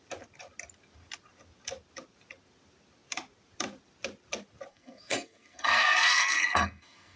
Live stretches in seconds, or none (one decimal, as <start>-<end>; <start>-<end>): 0.0-4.7